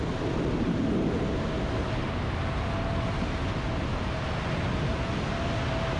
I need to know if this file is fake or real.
real